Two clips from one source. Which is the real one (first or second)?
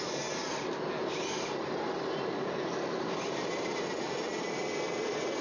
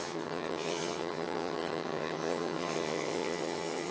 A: first